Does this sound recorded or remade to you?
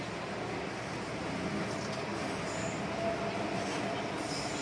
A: recorded